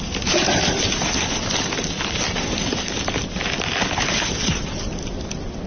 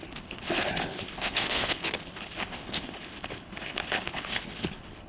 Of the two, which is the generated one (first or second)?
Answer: second